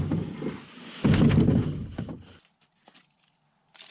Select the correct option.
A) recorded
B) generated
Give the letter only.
A